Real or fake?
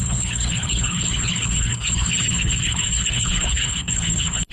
fake